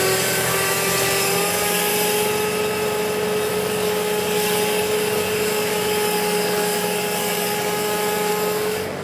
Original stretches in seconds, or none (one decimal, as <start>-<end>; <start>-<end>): 1.9-3.5